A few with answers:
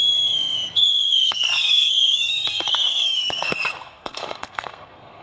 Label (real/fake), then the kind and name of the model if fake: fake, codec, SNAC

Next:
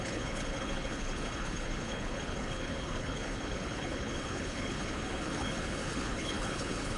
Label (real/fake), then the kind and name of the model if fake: fake, codec, HILCodec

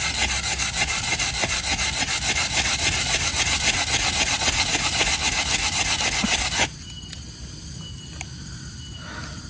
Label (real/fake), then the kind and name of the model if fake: real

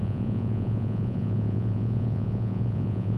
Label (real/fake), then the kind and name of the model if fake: fake, vocoder, Vocos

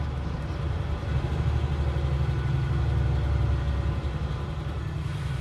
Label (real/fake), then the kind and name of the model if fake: real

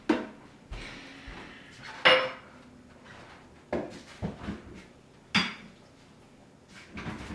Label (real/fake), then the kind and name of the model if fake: real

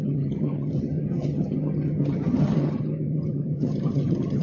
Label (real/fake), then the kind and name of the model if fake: fake, vocoder, HiFi-GAN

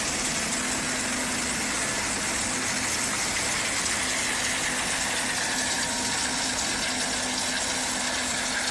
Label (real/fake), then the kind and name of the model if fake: real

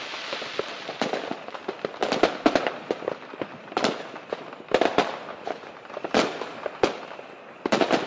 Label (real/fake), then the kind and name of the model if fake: real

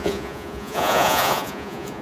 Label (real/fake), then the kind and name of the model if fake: fake, vocoder, Vocos